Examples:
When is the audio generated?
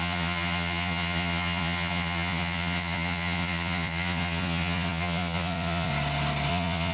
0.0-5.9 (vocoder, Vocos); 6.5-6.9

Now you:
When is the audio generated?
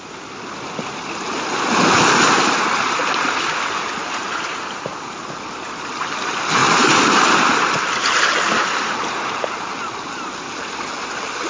none